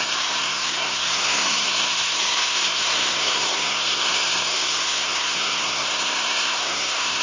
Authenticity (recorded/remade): remade